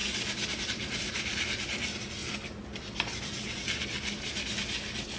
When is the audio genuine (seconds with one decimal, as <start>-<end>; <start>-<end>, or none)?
0.0-5.2